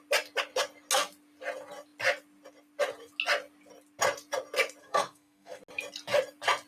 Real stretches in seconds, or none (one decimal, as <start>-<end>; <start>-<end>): 0.0-4.8; 5.6-6.7